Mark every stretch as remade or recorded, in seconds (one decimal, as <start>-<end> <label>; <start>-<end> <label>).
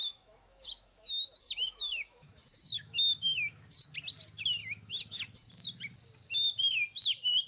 0.0-3.9 remade; 3.9-4.6 recorded; 4.6-5.5 remade; 5.5-7.5 recorded